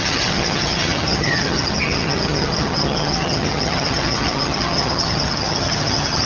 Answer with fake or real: fake